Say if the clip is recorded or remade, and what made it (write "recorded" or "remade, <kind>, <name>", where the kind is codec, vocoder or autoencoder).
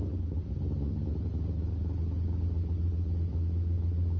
recorded